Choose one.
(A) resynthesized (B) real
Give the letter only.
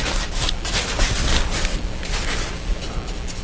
B